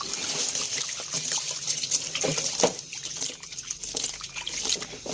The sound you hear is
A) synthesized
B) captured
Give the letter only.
B